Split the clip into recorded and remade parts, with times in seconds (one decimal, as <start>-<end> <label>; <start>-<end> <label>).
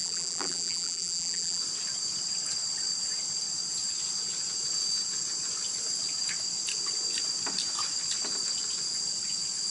0.0-1.6 remade; 1.6-9.7 recorded